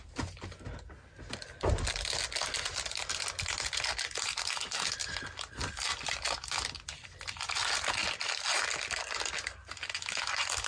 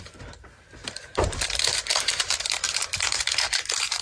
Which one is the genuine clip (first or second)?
first